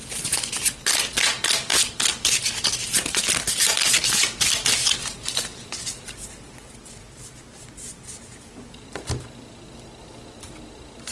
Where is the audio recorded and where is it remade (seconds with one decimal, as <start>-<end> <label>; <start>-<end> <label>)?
0.0-11.1 recorded

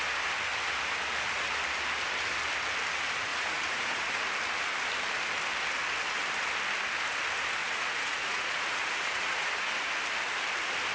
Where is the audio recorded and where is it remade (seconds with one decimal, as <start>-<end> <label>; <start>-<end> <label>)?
0.0-3.3 recorded; 3.3-4.2 remade; 4.2-7.6 recorded; 7.6-9.9 remade; 9.9-10.9 recorded

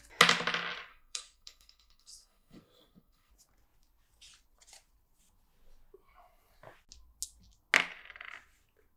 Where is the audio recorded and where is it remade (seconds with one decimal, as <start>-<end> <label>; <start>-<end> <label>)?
0.0-0.9 recorded; 0.9-3.3 remade; 3.3-9.0 recorded

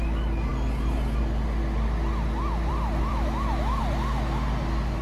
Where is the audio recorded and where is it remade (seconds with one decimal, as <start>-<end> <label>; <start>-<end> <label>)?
0.0-3.1 recorded; 3.1-3.8 remade; 3.8-5.0 recorded

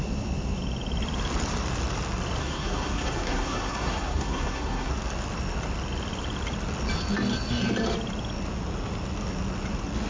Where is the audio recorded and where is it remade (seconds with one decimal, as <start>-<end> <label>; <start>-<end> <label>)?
0.0-2.4 recorded; 2.4-4.9 remade; 4.9-10.1 recorded